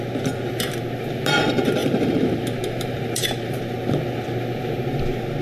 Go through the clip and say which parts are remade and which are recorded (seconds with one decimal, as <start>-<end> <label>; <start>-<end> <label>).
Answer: 0.0-1.8 recorded; 1.8-3.6 remade; 3.6-5.4 recorded